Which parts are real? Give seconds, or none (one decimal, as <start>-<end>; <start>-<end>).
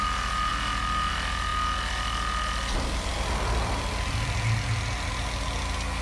0.0-6.0